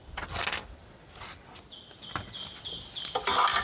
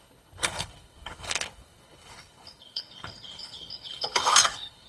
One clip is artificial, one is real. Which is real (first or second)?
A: first